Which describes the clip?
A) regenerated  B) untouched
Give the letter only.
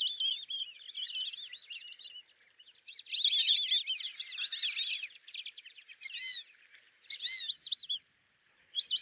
B